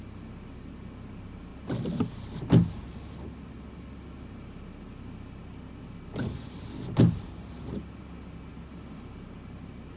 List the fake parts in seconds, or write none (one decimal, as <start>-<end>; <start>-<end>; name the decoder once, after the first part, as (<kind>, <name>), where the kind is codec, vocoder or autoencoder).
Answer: none